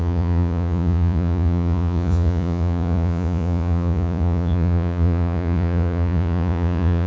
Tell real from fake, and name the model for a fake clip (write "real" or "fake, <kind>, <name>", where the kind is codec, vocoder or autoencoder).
fake, vocoder, Vocos